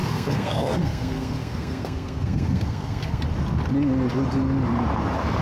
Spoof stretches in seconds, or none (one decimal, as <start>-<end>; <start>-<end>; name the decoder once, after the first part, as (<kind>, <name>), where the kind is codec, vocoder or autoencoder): 0.0-3.2 (codec, SNAC)